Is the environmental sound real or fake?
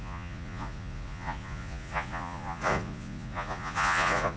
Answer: fake